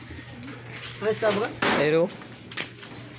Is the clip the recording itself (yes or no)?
yes